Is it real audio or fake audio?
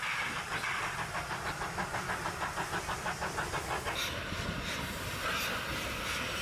real